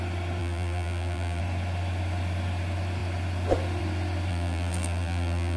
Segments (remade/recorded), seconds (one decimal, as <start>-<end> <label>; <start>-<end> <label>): 0.0-0.4 recorded; 0.4-1.4 remade; 1.4-4.3 recorded; 4.3-5.6 remade